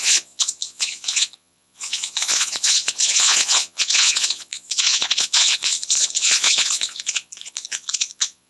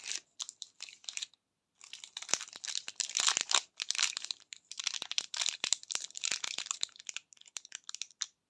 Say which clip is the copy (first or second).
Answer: first